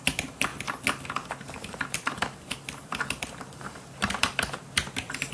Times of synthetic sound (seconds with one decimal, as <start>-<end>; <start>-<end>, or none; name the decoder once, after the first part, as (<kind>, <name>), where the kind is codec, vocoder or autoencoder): 0.0-0.5 (vocoder, BigVGAN v2); 1.7-5.3